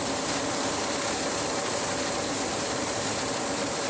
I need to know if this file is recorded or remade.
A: remade